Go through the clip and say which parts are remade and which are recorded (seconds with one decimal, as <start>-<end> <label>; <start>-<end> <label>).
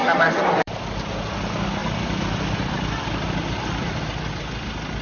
0.0-1.1 remade; 1.1-1.8 recorded; 1.8-4.0 remade; 4.0-5.0 recorded